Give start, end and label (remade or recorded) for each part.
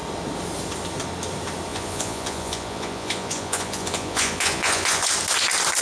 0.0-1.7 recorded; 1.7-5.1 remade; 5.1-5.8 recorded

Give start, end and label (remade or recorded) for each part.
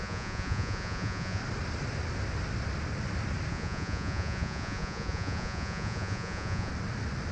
0.0-1.4 remade; 1.4-3.5 recorded; 3.5-6.7 remade; 6.7-7.3 recorded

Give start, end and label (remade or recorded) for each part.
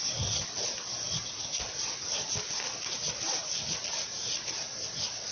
0.0-5.3 recorded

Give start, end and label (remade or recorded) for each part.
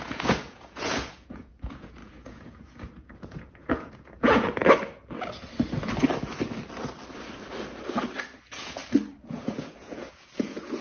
0.0-4.6 remade; 4.6-8.4 recorded; 8.4-8.8 remade; 8.8-9.3 recorded; 9.3-10.8 remade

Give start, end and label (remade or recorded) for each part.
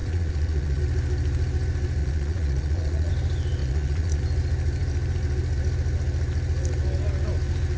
0.0-0.8 remade; 0.8-2.0 recorded; 2.0-3.1 remade; 3.1-3.6 recorded; 3.6-4.2 remade; 4.2-7.8 recorded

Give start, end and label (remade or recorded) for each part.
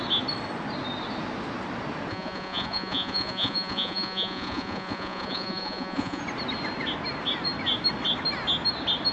0.0-2.1 recorded; 2.1-6.2 remade; 6.2-9.1 recorded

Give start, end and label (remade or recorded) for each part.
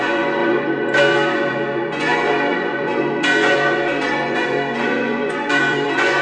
0.0-6.2 remade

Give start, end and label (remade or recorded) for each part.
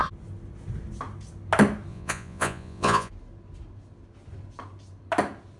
0.0-1.9 recorded; 1.9-3.1 remade; 3.1-5.6 recorded